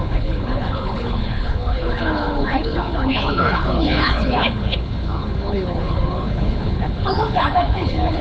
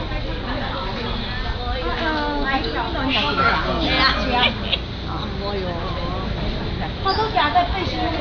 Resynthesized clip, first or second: first